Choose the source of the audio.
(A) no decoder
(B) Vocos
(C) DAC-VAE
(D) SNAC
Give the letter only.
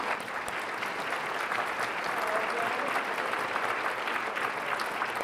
A